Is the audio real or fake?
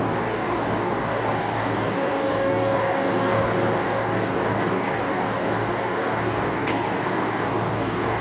fake